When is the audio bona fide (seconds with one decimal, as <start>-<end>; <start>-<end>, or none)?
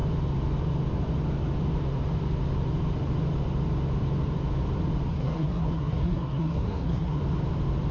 0.0-5.1; 7.2-7.9